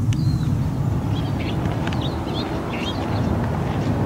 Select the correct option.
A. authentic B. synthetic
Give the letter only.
A